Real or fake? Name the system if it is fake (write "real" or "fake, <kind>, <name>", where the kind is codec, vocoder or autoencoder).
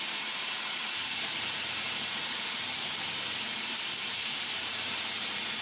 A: fake, vocoder, BigVGAN v2